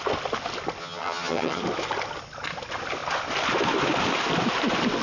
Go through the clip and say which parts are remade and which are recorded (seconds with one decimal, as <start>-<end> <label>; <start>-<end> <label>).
0.0-0.8 recorded; 0.8-1.6 remade; 1.6-5.0 recorded